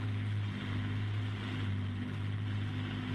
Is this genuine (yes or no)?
yes